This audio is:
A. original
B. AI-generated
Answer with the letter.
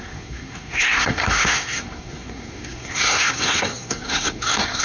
B